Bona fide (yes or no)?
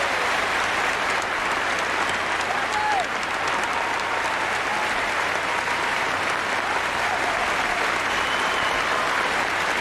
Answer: no